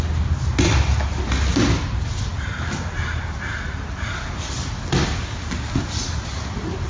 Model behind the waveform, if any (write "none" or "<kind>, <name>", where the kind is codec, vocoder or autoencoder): none